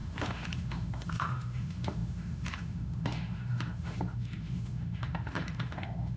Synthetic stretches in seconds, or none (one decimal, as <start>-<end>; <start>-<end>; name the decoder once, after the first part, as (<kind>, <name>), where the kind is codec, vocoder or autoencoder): 0.0-6.2 (autoencoder, DAC-VAE)